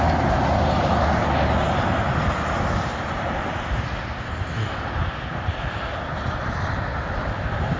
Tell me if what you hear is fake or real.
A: real